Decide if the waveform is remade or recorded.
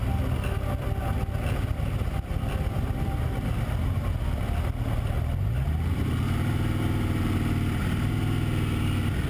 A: recorded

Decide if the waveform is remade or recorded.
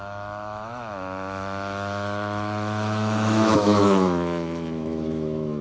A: remade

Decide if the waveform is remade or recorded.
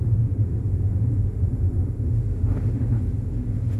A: remade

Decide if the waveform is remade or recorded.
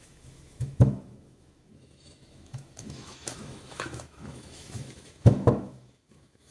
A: remade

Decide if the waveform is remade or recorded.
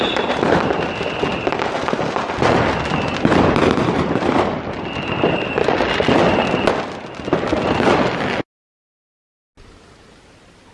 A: recorded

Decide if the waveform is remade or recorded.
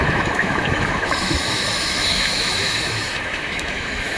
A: remade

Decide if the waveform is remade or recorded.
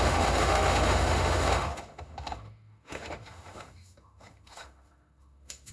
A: remade